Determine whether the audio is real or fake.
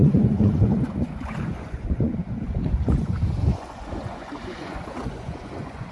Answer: fake